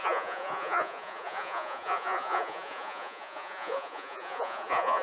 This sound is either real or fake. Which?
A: fake